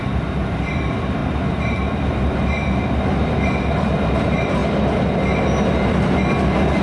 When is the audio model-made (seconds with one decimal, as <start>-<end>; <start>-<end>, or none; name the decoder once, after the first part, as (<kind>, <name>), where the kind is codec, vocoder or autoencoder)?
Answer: 1.2-2.1 (vocoder, BigVGAN v2)